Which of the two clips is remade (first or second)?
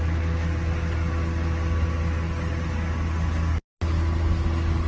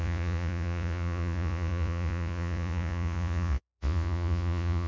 second